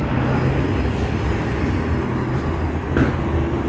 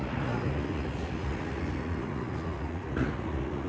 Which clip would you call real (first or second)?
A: first